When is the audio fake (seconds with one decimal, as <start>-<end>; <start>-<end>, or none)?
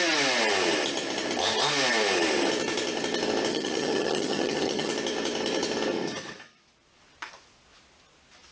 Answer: 3.5-4.9